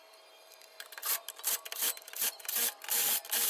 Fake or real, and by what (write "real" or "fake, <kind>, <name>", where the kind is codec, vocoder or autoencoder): real